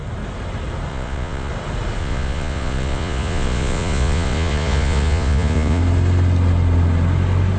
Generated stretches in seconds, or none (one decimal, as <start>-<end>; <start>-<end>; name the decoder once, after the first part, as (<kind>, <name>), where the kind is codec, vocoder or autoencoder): 0.9-1.5 (vocoder, Vocos); 2.0-5.8